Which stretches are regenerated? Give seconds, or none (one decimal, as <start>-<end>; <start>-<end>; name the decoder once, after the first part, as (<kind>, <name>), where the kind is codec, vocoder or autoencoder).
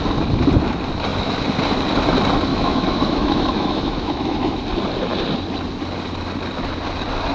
2.5-4.6 (autoencoder, DAC-VAE)